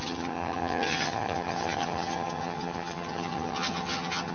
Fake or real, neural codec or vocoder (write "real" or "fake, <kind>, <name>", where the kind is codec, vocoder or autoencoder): fake, vocoder, HiFi-GAN